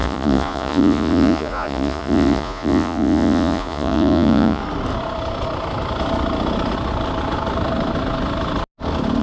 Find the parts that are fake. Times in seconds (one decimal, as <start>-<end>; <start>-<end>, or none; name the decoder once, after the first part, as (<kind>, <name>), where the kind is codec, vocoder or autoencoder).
0.0-4.6 (vocoder, Vocos)